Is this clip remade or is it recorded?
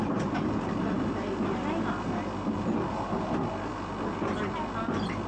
recorded